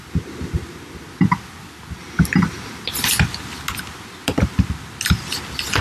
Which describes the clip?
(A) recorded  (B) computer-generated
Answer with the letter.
A